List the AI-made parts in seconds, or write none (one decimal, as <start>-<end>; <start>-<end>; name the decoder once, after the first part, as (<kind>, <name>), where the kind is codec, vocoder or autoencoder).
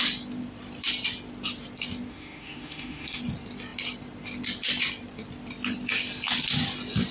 2.1-3.2 (autoencoder, DAC-VAE)